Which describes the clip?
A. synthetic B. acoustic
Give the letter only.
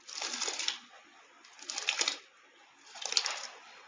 B